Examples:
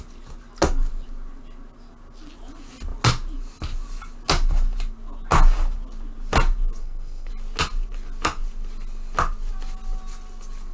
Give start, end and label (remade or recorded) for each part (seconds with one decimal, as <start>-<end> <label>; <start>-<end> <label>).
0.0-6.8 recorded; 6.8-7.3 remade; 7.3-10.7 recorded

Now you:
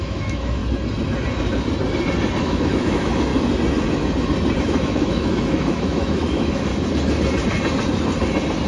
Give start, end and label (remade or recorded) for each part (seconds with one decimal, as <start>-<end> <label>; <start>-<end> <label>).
0.0-0.6 remade; 0.6-2.4 recorded; 2.4-3.3 remade; 3.3-4.6 recorded; 4.6-6.7 remade; 6.7-8.7 recorded

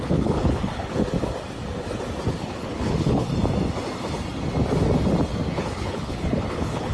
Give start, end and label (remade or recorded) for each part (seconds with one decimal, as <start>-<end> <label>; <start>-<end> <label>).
0.0-1.0 remade; 1.0-2.4 recorded; 2.4-3.3 remade; 3.3-5.5 recorded; 5.5-6.9 remade

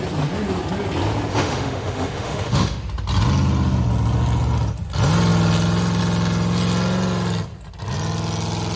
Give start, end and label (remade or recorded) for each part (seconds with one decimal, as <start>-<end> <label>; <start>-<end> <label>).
0.0-1.3 recorded; 1.3-2.8 remade; 2.8-8.8 recorded

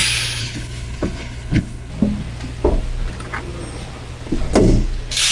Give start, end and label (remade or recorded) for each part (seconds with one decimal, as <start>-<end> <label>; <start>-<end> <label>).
0.0-0.4 recorded; 0.4-1.9 remade; 1.9-5.3 recorded